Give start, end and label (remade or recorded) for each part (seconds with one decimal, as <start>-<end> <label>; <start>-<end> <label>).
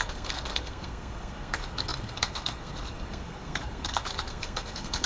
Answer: 0.0-5.1 remade